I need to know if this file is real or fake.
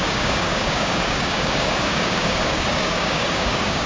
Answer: fake